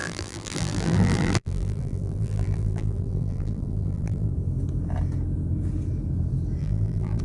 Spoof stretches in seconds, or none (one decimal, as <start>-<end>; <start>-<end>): 0.0-4.3; 6.6-7.2